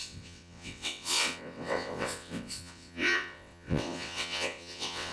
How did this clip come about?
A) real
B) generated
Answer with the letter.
B